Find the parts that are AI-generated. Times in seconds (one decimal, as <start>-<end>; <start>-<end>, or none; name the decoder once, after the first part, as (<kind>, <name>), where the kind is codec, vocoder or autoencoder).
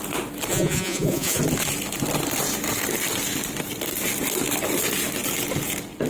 0.5-1.4 (vocoder, Vocos)